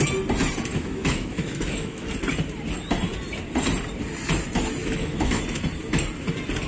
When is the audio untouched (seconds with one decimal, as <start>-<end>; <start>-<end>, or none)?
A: 0.0-0.7; 2.1-4.8; 5.4-6.7